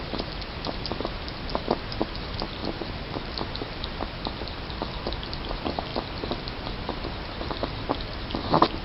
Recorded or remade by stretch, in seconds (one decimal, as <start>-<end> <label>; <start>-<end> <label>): 0.0-8.8 recorded